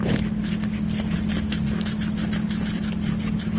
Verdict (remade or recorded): recorded